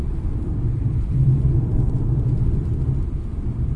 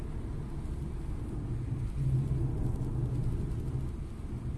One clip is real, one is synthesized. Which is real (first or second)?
second